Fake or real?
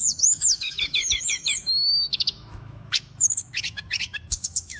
fake